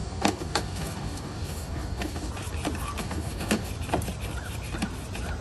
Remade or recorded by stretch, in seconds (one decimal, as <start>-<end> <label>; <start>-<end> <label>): 0.0-2.3 remade; 2.3-3.0 recorded; 3.0-3.7 remade; 3.7-5.4 recorded